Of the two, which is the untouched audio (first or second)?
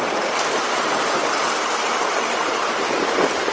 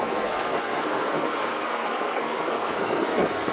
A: first